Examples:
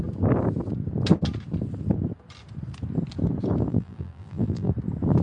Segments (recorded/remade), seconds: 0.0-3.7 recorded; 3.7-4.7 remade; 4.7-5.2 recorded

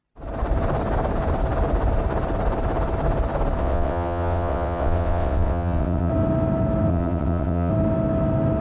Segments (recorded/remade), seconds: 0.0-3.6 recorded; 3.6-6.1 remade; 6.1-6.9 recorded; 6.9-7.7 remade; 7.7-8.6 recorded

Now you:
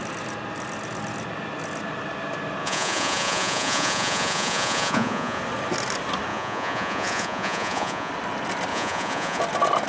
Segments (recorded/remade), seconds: 0.0-2.6 recorded; 2.6-5.4 remade; 5.4-6.3 recorded; 6.3-8.1 remade; 8.1-8.7 recorded; 8.7-9.4 remade; 9.4-9.9 recorded

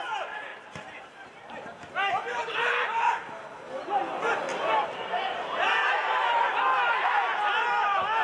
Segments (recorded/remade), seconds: 0.0-0.5 recorded; 0.5-1.5 remade; 1.5-2.3 recorded; 2.3-3.2 remade; 3.2-4.5 recorded; 4.5-6.5 remade; 6.5-8.2 recorded

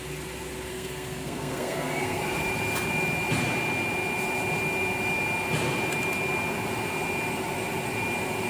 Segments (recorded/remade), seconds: 0.0-0.7 recorded; 0.7-2.2 remade; 2.2-8.5 recorded